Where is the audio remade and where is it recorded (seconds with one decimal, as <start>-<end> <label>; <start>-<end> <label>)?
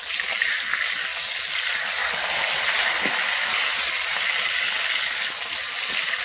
0.0-6.2 recorded